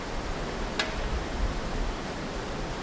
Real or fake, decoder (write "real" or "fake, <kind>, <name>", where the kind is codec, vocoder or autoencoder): real